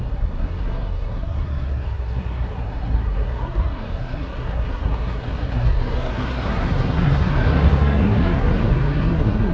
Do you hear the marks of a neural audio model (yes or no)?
yes